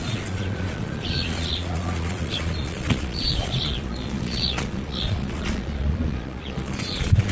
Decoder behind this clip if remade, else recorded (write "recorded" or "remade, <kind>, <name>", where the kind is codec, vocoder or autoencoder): remade, vocoder, Vocos